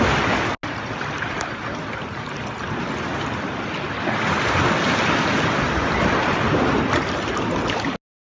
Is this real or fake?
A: real